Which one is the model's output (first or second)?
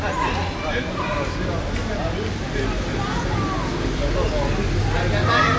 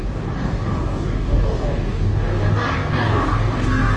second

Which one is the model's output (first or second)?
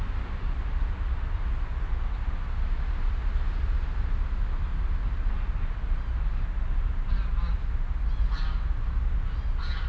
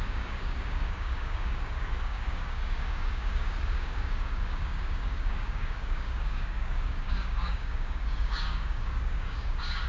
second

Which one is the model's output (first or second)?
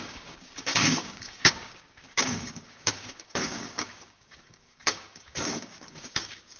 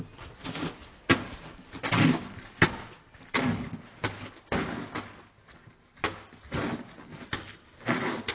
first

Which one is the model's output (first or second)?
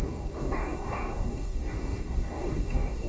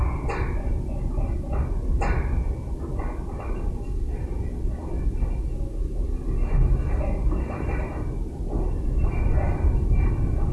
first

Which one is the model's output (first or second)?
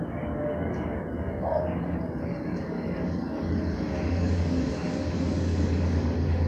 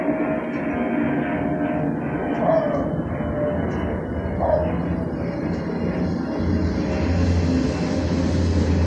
first